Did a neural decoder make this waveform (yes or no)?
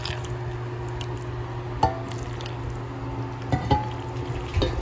no